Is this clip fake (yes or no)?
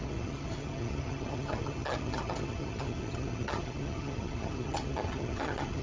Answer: yes